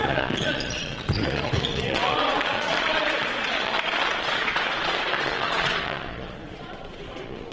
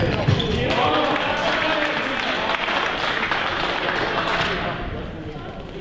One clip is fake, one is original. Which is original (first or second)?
second